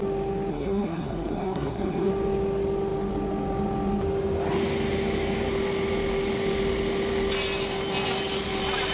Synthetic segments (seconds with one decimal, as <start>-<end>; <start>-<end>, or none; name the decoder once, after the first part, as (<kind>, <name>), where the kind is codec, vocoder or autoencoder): 0.5-2.1 (codec, SNAC)